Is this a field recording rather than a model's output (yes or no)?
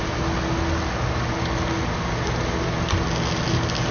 yes